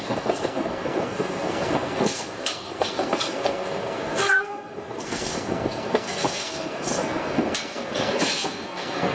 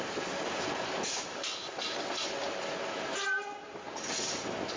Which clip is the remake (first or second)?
first